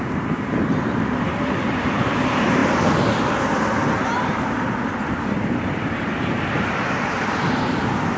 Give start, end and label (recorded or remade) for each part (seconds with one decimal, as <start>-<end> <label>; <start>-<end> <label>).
0.0-8.2 remade